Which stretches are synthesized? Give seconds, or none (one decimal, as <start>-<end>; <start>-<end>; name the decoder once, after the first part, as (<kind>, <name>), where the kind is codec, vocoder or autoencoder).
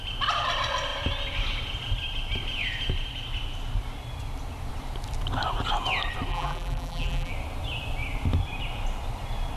6.3-7.3 (vocoder, BigVGAN v2)